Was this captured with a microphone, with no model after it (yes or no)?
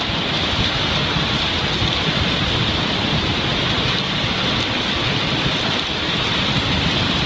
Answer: yes